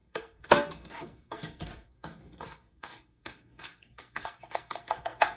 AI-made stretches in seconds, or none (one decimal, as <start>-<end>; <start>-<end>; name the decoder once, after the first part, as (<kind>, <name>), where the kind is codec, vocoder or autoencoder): 0.0-5.4 (codec, SNAC)